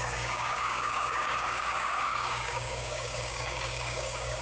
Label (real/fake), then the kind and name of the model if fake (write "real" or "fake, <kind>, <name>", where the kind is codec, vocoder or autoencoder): fake, codec, DAC